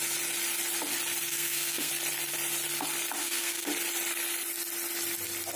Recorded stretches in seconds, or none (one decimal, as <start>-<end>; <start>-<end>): 0.0-1.3; 1.9-3.2; 3.7-5.6